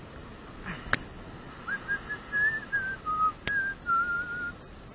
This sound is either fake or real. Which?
real